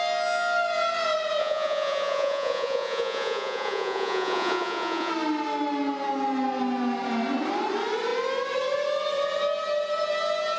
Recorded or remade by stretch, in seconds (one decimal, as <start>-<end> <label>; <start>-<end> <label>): 0.0-1.4 recorded; 1.4-5.1 remade; 5.1-10.6 recorded